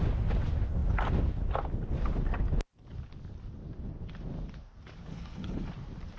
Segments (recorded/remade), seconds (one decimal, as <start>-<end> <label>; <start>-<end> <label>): 0.0-5.1 recorded; 5.1-5.7 remade; 5.7-6.2 recorded